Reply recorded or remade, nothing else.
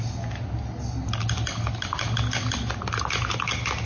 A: recorded